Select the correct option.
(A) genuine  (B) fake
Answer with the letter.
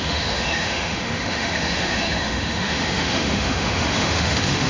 B